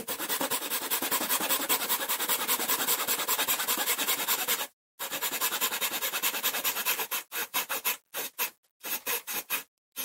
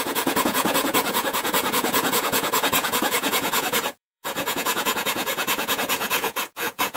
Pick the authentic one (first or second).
first